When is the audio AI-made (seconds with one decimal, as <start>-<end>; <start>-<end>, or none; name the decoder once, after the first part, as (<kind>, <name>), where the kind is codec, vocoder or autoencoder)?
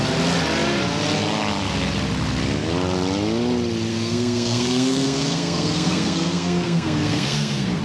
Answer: 3.9-7.8 (codec, SNAC)